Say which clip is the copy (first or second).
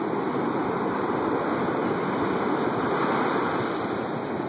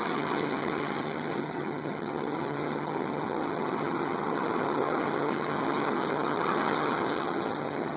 second